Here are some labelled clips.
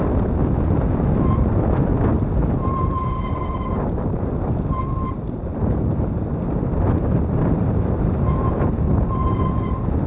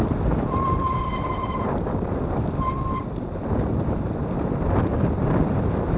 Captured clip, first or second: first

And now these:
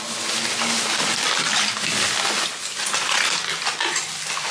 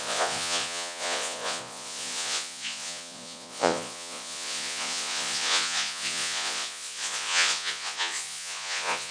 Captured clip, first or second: first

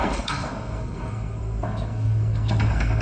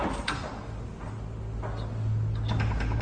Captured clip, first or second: second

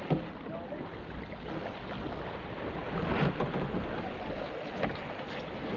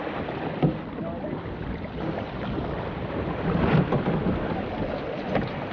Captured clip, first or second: first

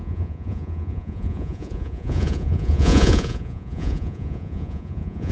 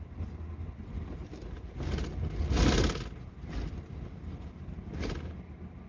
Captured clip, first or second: second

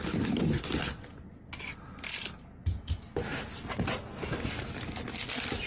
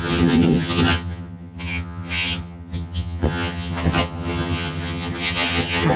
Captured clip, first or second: first